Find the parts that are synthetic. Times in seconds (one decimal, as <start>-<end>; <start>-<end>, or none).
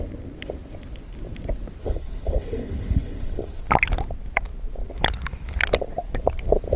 1.8-3.6